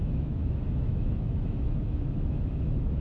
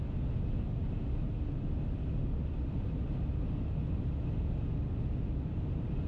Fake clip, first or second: first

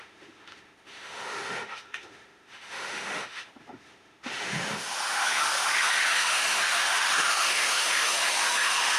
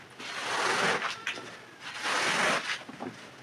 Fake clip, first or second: first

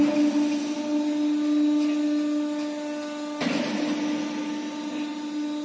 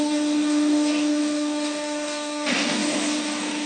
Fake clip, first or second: second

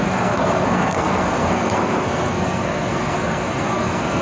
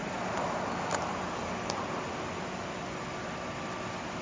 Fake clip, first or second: first